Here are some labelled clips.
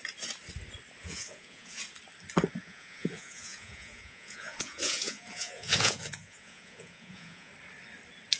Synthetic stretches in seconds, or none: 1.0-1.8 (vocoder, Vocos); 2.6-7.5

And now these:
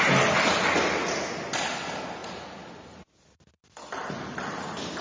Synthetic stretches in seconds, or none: none

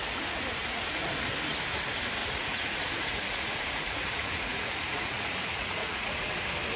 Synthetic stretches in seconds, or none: 0.6-1.1 (vocoder, Vocos); 2.2-6.3

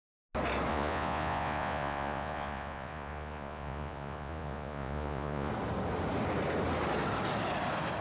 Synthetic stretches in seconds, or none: 0.7-5.5 (vocoder, Vocos)

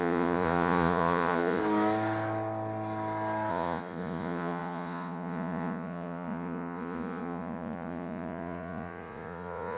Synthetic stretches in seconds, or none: 0.0-1.6 (vocoder, Vocos); 3.5-9.8